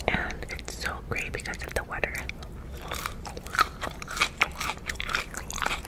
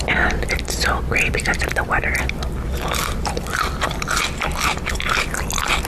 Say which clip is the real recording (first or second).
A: second